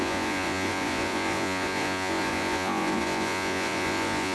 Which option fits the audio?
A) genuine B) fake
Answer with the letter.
B